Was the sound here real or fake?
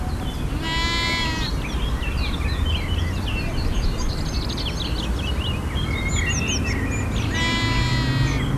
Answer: real